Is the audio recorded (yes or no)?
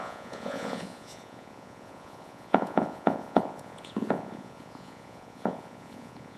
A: no